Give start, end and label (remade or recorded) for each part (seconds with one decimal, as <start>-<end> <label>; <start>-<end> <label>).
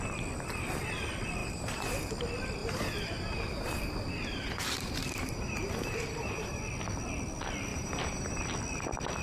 0.0-1.4 recorded; 1.4-2.1 remade; 2.1-2.6 recorded; 2.6-6.6 remade; 6.6-7.7 recorded; 7.7-8.4 remade; 8.4-9.2 recorded